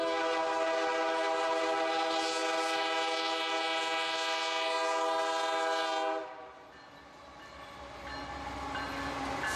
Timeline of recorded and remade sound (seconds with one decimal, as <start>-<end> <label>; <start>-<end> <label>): 0.0-9.6 recorded